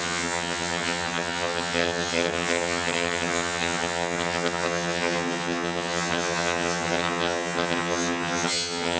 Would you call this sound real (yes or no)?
no